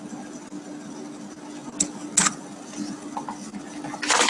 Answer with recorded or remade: recorded